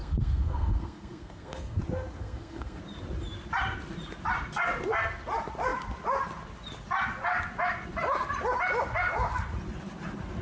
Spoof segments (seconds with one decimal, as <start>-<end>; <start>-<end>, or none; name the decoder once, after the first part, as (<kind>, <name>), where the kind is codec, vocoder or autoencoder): 0.0-1.8 (codec, SNAC); 2.2-2.8